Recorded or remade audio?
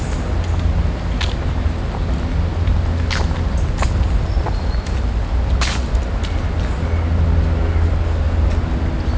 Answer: recorded